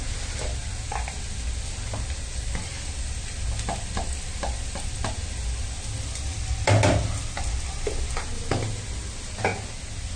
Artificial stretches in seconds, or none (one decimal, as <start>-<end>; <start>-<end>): none